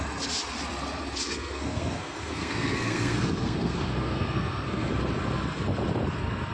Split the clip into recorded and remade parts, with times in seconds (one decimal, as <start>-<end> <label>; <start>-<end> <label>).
0.0-1.3 recorded; 1.3-4.9 remade; 4.9-6.5 recorded